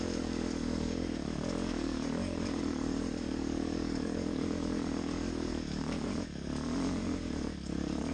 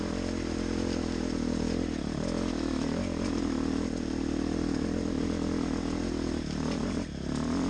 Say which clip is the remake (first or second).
first